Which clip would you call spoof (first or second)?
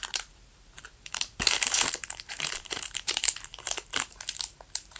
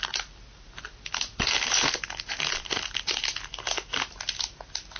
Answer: first